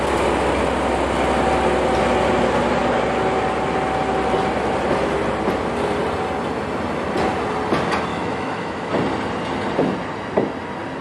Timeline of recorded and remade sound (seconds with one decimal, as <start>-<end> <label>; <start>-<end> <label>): 0.0-8.1 recorded; 8.1-8.9 remade; 8.9-11.0 recorded